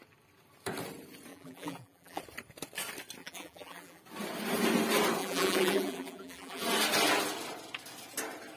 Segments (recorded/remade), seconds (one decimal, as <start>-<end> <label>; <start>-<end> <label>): 0.0-1.3 recorded; 1.3-2.2 remade; 2.2-3.2 recorded; 3.2-4.0 remade; 4.0-5.2 recorded; 5.2-6.6 remade; 6.6-8.6 recorded